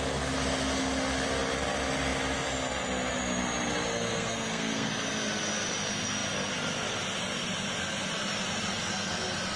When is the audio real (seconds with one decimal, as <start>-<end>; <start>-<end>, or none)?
0.0-3.9; 4.9-9.6